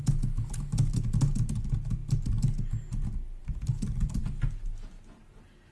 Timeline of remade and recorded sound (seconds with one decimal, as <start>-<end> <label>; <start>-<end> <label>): 0.0-5.7 recorded